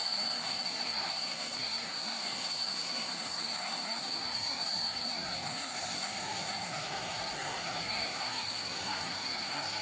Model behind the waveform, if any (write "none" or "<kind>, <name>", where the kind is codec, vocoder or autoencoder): codec, SNAC